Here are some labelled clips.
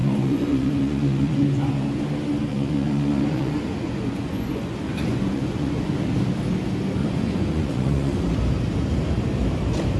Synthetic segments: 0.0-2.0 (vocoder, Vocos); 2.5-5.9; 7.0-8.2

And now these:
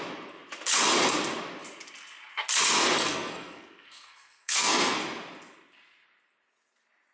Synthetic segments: 3.0-5.0 (codec, SNAC)

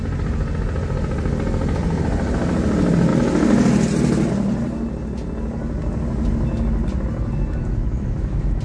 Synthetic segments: 7.6-8.6 (autoencoder, DAC-VAE)

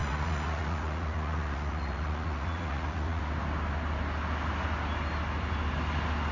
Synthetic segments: 0.0-3.2 (vocoder, Vocos)

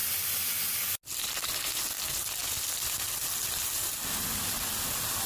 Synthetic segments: none

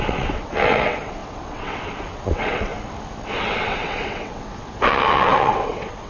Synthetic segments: 0.0-2.7 (vocoder, WaveNeXt); 3.4-6.1

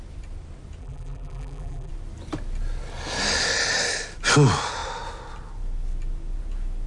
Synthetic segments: 0.8-1.9 (vocoder, BigVGAN v2)

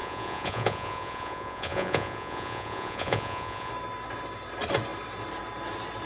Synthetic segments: 0.0-3.7 (vocoder, Vocos)